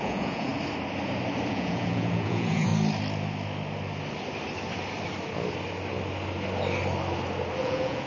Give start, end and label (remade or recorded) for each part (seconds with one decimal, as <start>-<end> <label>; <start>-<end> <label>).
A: 0.0-0.5 remade; 0.5-1.5 recorded; 1.5-2.7 remade; 2.7-7.6 recorded; 7.6-8.1 remade